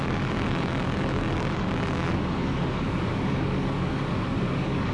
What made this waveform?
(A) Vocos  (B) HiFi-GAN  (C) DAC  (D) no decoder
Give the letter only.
C